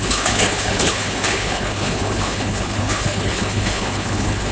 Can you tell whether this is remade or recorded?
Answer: remade